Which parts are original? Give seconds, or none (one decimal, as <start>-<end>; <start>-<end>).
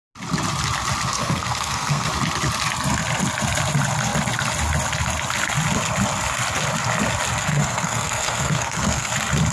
0.0-1.1; 2.1-7.4; 9.1-9.5